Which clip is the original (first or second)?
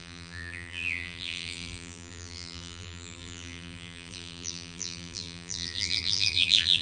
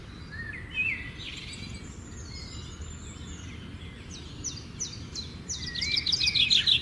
second